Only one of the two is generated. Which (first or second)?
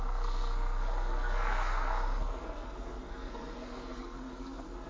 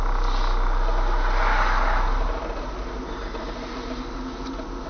first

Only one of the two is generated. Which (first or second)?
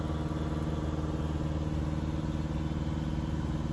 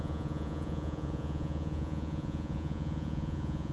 second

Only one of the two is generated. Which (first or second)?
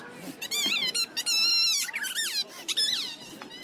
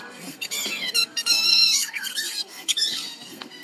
second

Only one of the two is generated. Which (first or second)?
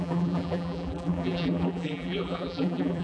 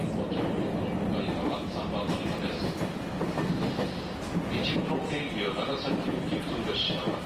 first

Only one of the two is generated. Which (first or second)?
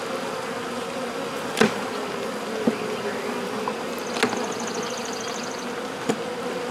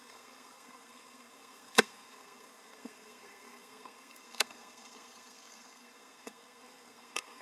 second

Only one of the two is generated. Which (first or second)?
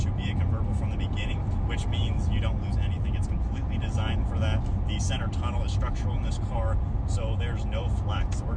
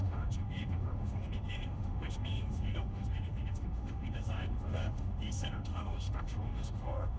second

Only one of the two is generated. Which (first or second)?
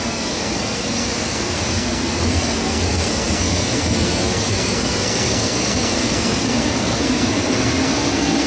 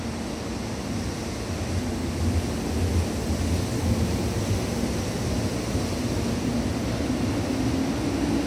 first